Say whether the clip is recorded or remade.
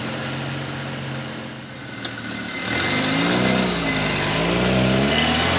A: recorded